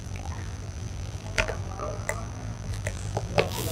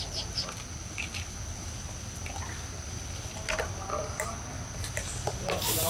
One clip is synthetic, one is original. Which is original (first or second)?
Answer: second